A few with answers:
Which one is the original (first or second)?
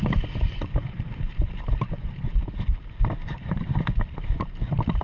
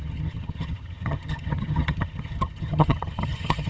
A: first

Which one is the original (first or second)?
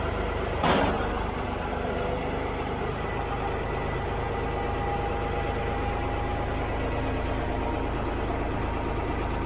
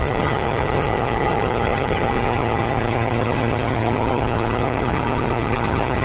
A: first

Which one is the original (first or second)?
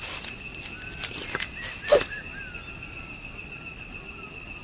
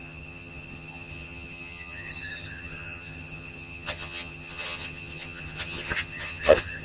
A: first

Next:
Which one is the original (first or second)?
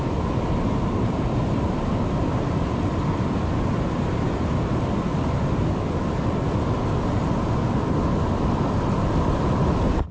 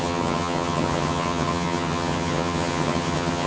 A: first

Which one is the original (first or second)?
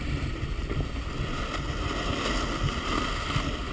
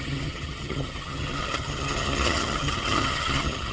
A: first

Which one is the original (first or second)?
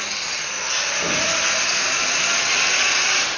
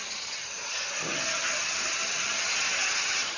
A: first